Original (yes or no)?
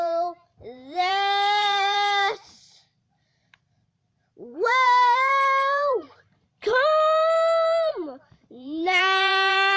no